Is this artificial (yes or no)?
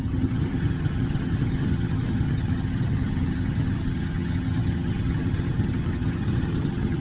yes